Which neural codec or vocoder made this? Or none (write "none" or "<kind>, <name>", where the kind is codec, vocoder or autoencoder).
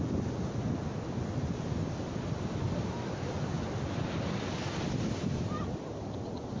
none